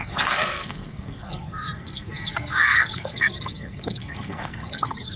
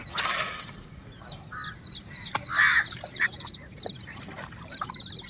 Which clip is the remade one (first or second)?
first